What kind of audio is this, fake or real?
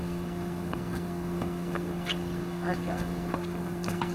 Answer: fake